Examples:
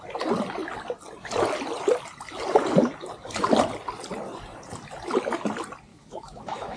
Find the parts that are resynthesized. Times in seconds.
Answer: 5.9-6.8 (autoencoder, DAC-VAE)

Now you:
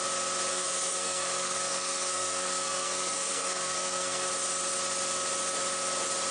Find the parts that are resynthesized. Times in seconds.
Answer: 0.5-4.3 (codec, SNAC)

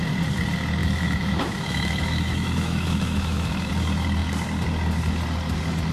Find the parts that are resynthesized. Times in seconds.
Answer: 0.8-3.7 (autoencoder, DAC-VAE)

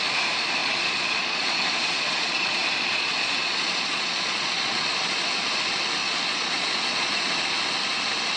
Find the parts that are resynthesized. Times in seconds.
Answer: 0.6-5.1 (vocoder, Vocos); 6.0-7.1

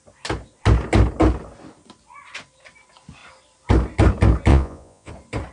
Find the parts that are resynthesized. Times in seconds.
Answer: 4.5-5.1 (vocoder, Vocos)

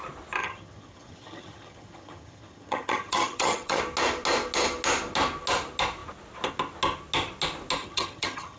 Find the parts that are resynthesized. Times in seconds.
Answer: 0.4-3.8 (vocoder, HiFi-GAN); 7.8-8.6